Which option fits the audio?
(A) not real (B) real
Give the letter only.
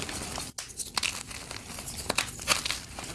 B